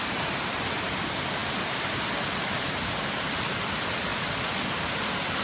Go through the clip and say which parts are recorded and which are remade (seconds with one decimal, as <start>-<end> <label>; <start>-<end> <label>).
0.0-5.4 recorded